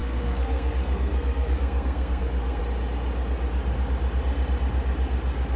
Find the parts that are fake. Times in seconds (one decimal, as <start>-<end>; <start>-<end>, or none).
0.0-2.6